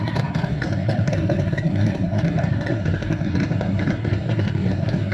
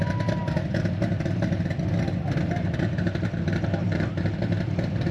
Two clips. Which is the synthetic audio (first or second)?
first